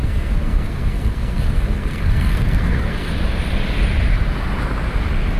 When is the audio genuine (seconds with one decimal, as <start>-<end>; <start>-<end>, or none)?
3.1-5.4